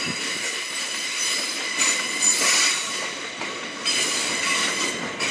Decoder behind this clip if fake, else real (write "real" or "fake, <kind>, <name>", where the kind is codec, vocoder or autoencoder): fake, vocoder, BigVGAN v2